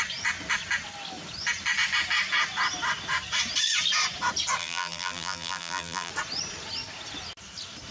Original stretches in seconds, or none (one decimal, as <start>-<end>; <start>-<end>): 0.0-4.6; 6.1-7.9